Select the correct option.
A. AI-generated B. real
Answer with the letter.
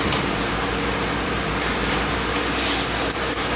A